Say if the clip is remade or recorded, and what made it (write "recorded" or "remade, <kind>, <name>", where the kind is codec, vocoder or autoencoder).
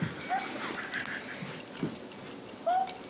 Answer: recorded